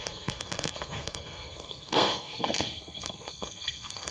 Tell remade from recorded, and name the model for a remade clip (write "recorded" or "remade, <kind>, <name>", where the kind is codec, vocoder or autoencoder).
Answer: remade, codec, SNAC